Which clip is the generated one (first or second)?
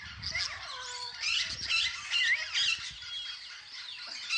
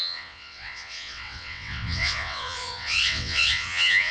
second